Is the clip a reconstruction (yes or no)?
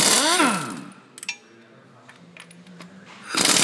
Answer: no